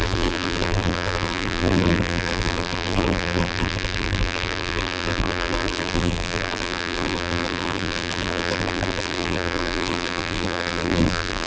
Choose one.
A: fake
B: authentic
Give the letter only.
A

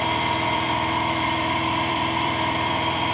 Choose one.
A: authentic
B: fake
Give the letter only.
B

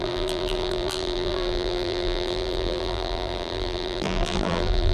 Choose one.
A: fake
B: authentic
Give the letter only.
A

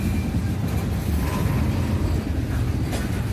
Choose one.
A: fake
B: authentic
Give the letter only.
B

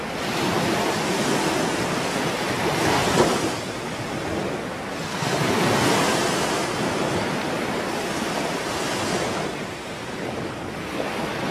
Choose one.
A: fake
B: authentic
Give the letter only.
A